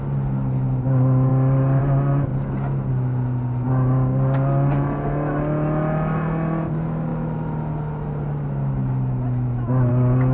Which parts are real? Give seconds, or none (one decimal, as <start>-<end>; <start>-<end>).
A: 0.0-10.3